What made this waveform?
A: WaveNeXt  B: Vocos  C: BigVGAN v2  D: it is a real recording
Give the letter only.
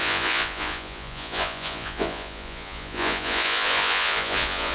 B